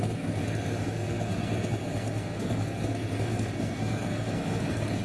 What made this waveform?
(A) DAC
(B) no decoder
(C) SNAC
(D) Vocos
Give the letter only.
C